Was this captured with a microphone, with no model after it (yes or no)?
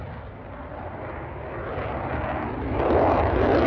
yes